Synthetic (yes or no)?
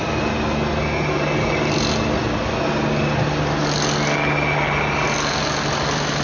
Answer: no